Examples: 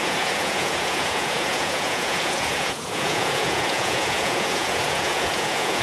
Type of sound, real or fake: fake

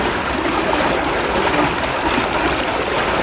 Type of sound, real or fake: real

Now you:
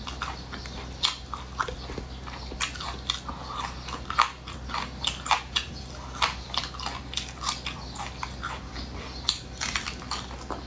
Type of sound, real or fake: real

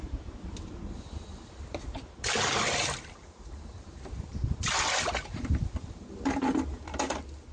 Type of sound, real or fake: real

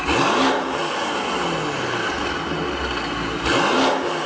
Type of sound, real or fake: real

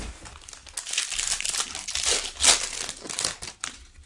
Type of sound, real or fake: real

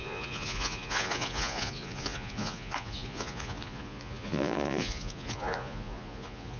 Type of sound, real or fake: fake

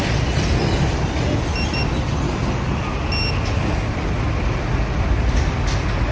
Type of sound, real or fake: real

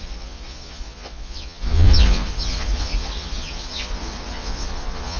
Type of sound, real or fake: fake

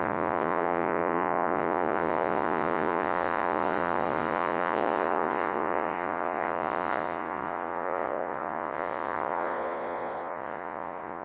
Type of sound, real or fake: fake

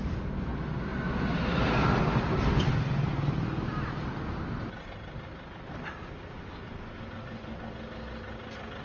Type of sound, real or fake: real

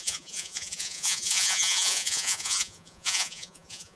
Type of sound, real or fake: fake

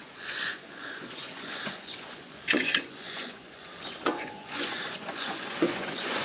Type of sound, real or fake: fake